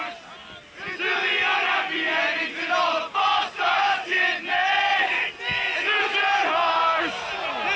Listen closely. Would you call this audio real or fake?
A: real